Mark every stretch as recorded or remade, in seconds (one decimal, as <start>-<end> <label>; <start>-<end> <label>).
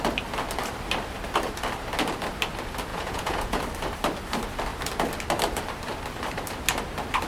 0.0-2.9 recorded; 2.9-3.6 remade; 3.6-7.3 recorded